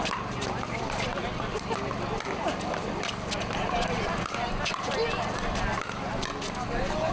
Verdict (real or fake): real